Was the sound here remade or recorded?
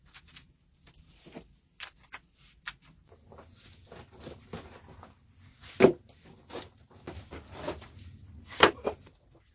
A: recorded